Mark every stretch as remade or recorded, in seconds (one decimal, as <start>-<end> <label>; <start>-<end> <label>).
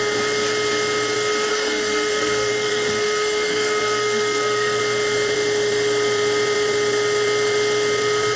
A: 0.0-1.5 recorded; 1.5-4.8 remade; 4.8-8.4 recorded